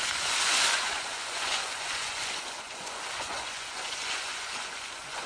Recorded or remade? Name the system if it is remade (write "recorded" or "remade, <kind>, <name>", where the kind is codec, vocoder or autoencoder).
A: remade, vocoder, Vocos